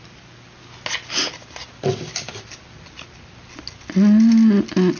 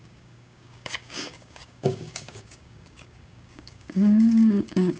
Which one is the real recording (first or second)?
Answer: first